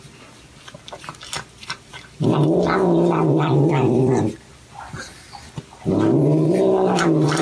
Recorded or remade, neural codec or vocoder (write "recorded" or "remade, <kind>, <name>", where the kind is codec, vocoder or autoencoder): recorded